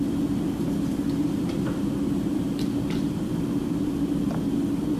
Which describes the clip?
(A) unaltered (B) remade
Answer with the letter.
A